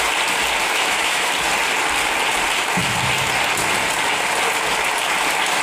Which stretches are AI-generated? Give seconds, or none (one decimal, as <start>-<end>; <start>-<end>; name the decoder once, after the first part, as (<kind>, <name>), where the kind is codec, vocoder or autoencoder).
0.6-1.3 (autoencoder, DAC-VAE)